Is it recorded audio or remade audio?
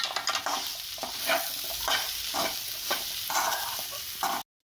recorded